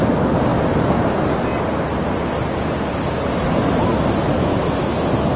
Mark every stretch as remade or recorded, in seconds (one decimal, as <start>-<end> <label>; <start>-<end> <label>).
0.0-5.4 recorded